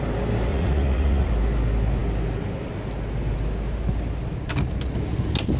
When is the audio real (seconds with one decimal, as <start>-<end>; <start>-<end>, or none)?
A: 0.0-0.5; 1.3-5.6